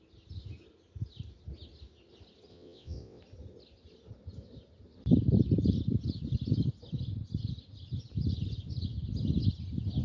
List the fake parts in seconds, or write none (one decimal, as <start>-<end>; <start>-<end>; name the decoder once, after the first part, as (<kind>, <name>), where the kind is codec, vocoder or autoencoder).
2.5-3.2 (vocoder, WaveNeXt)